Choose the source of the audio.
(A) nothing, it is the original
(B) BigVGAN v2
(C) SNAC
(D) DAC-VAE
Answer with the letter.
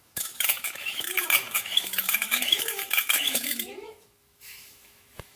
D